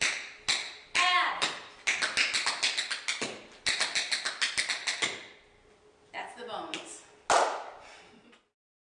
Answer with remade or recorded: recorded